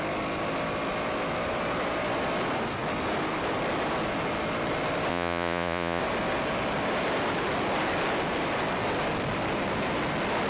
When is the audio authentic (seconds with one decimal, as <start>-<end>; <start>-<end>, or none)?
0.0-5.1; 6.0-10.5